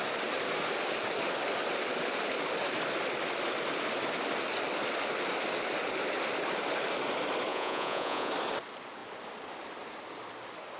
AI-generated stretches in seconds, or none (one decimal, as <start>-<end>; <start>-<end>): 7.5-8.3